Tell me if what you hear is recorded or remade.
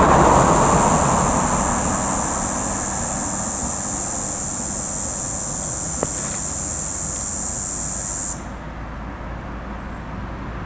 recorded